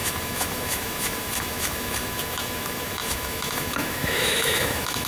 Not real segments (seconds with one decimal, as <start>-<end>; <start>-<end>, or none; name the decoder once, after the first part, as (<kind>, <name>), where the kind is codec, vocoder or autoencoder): 0.0-5.1 (autoencoder, DAC-VAE)